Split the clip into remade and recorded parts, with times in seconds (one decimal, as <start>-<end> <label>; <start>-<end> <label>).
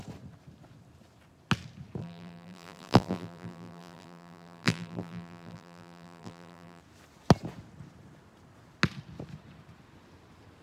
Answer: 0.0-2.0 recorded; 2.0-6.8 remade; 6.8-10.6 recorded